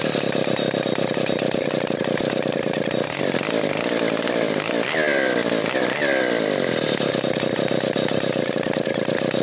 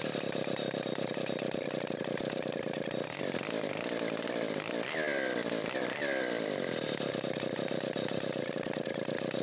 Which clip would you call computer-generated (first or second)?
second